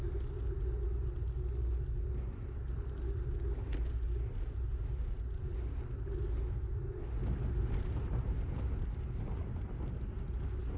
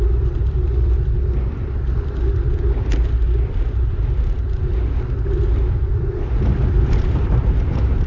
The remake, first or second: second